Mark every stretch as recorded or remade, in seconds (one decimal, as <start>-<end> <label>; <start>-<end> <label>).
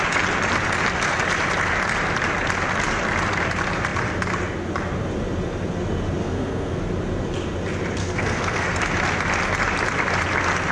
0.0-6.2 recorded; 6.2-6.8 remade; 6.8-8.0 recorded; 8.0-8.8 remade; 8.8-10.7 recorded